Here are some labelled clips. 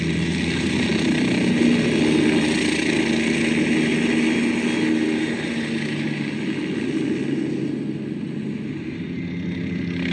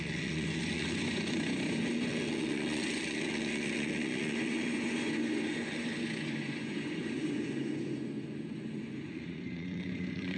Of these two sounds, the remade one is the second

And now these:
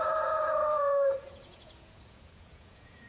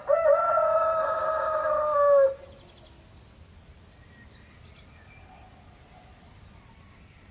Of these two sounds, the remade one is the first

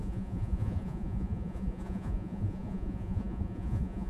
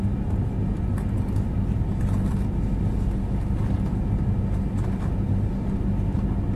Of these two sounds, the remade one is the first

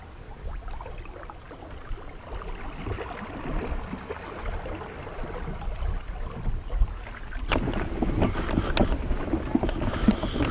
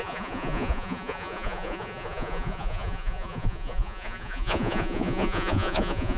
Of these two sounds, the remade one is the second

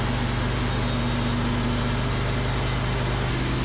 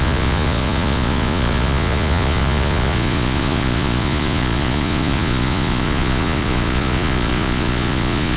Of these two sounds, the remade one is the second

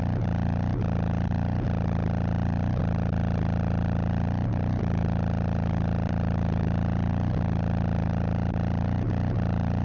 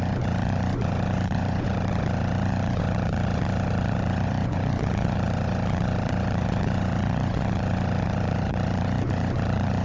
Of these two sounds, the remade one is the second